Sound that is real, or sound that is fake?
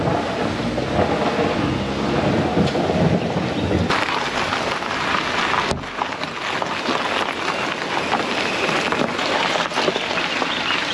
real